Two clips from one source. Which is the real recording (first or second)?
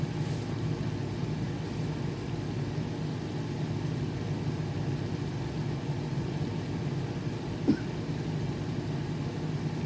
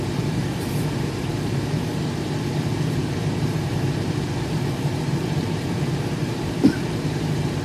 first